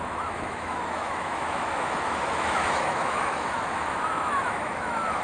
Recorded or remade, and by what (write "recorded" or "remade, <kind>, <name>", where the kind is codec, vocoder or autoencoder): remade, autoencoder, DAC-VAE